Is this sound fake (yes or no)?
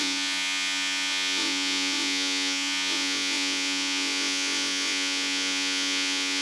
yes